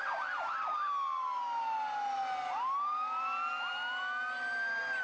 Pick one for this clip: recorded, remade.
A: recorded